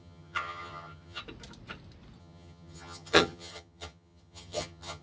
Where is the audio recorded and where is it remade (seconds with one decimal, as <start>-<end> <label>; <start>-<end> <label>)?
0.0-1.2 remade; 1.2-2.2 recorded; 2.2-5.0 remade